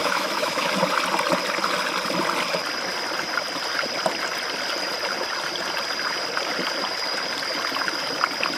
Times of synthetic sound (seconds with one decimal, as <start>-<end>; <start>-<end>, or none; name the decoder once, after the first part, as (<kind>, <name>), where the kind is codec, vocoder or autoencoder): 0.0-0.7 (autoencoder, DAC-VAE)